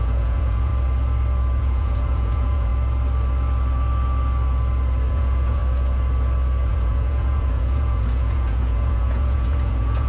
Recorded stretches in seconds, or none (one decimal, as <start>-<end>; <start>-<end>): 0.7-1.6; 2.7-5.1; 5.6-6.7